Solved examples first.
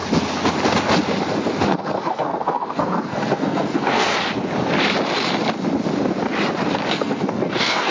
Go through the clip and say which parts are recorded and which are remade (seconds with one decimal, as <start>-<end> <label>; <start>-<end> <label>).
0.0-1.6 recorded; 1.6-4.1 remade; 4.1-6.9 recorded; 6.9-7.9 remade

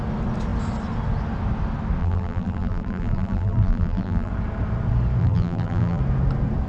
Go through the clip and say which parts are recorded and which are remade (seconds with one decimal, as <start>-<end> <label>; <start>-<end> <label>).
0.0-2.0 recorded; 2.0-4.3 remade; 4.3-5.2 recorded; 5.2-6.0 remade; 6.0-6.7 recorded

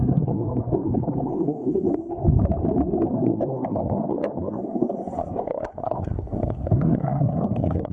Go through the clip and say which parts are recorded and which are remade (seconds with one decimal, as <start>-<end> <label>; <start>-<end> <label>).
0.0-1.9 remade; 1.9-3.1 recorded; 3.1-7.9 remade

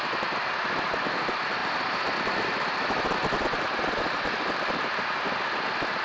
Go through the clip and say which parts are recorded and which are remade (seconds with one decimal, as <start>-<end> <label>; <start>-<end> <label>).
0.0-6.0 recorded

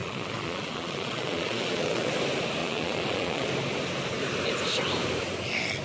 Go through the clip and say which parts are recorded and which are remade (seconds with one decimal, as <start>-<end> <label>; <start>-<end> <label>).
0.0-2.1 remade; 2.1-2.6 recorded; 2.6-3.5 remade; 3.5-5.8 recorded

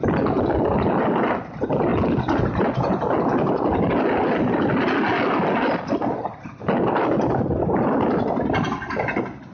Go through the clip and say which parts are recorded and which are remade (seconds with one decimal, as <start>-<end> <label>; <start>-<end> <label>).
0.0-9.5 recorded

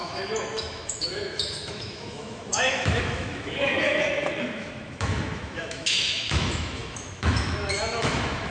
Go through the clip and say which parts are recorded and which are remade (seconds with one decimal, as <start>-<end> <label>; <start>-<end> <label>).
0.0-8.5 remade

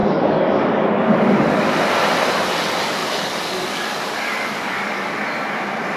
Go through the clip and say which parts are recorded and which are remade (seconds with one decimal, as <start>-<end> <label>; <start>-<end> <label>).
0.0-1.7 remade; 1.7-3.0 recorded; 3.0-5.2 remade; 5.2-6.0 recorded